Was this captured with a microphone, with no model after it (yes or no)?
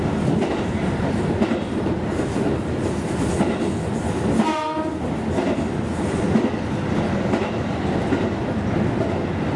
yes